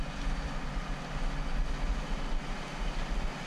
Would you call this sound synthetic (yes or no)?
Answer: no